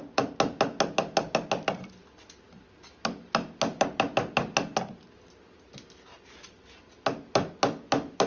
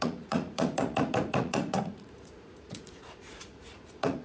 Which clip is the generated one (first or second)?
second